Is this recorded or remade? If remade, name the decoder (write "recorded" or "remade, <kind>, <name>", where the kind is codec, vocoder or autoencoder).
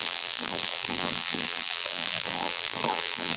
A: remade, vocoder, BigVGAN v2